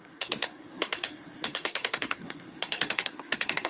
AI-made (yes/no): yes